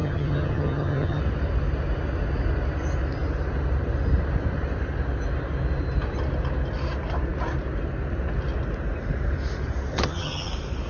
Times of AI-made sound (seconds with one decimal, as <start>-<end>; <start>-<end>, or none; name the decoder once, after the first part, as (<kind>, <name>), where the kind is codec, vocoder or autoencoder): 0.0-1.2 (vocoder, HiFi-GAN); 9.9-10.5